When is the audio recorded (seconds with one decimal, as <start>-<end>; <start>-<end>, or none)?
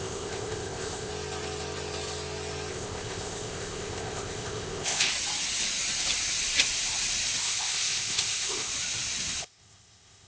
1.1-2.7; 5.1-7.4; 8.7-9.4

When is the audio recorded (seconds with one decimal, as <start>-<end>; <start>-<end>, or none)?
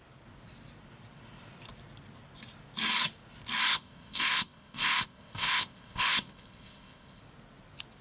0.0-3.7; 7.2-8.0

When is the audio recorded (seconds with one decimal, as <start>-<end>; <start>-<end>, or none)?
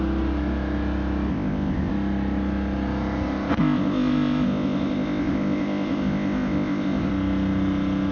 0.0-1.3; 1.9-3.5; 7.1-8.1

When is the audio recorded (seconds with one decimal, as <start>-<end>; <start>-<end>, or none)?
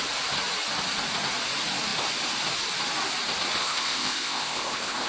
0.0-3.6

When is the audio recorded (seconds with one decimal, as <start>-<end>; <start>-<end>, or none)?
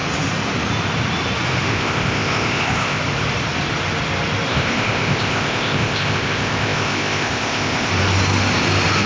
0.0-1.7; 3.0-4.5; 7.9-9.1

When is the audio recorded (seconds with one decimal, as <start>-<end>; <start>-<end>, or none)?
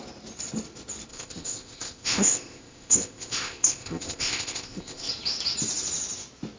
0.0-1.1; 5.1-6.6